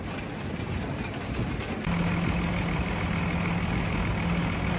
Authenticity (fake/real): real